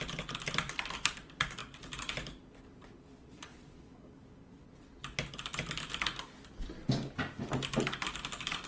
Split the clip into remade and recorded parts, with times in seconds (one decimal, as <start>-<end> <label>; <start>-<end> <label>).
0.0-3.2 recorded; 3.2-3.9 remade; 3.9-8.7 recorded